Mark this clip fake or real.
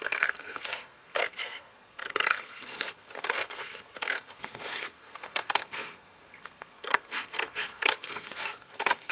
fake